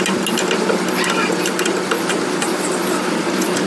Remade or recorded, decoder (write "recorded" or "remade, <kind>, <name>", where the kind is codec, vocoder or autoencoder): recorded